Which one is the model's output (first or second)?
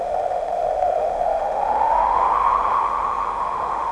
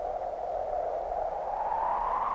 first